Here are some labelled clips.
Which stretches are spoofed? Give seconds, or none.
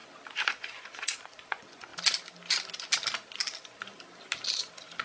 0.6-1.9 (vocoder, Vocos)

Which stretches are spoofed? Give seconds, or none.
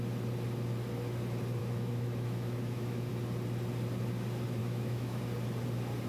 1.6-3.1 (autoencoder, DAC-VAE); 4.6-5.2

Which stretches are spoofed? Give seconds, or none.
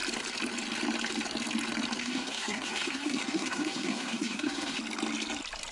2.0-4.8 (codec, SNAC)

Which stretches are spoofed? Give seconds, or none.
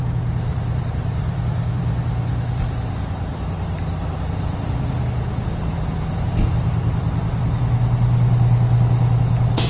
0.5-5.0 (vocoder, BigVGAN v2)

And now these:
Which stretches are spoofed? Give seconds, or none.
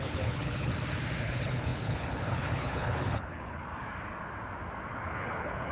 0.0-0.7 (codec, HILCodec); 1.2-3.6; 5.0-5.7